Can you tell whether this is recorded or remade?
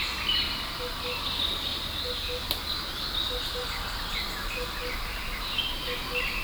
recorded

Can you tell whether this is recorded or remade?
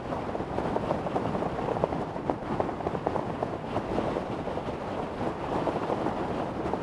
recorded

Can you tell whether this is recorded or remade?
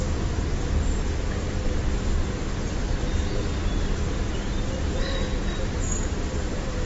recorded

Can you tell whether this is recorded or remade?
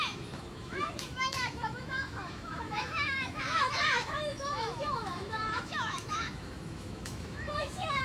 remade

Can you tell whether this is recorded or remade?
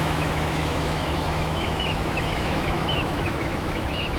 remade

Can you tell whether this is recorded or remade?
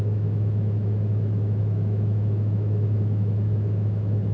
remade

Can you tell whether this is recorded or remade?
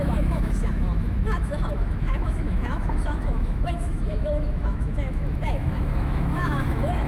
remade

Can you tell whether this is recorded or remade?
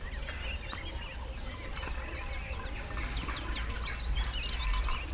recorded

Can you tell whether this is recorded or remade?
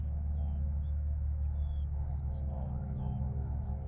remade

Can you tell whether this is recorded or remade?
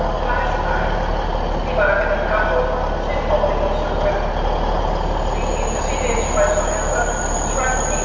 recorded